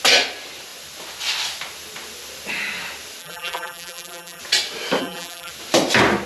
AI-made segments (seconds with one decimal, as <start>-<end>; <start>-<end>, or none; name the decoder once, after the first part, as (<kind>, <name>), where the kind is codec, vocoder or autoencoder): 3.2-4.4 (vocoder, BigVGAN v2); 5.0-5.5